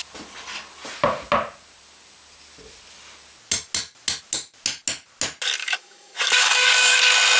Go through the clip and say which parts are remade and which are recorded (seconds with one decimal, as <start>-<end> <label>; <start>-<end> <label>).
0.0-5.6 recorded; 5.6-7.0 remade; 7.0-7.4 recorded